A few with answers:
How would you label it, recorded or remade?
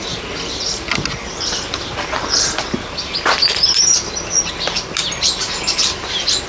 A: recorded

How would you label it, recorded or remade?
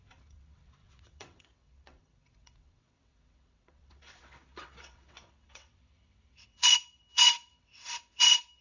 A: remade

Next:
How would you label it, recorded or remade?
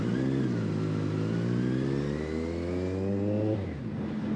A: recorded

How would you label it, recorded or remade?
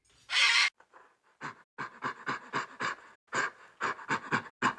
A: recorded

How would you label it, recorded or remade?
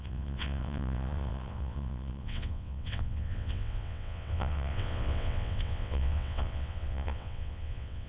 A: remade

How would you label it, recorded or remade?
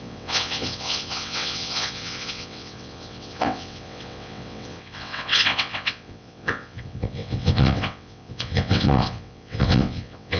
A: remade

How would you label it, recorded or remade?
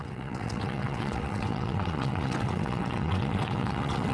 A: remade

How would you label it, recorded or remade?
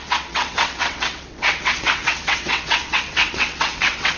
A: remade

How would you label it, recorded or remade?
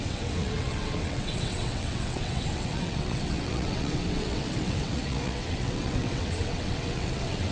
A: remade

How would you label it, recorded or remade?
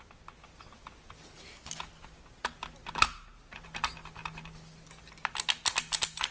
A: recorded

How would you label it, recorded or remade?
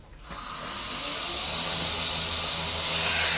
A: recorded